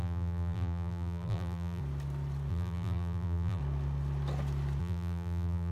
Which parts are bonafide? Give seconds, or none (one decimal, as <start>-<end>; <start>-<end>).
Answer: 1.8-2.5; 3.6-4.8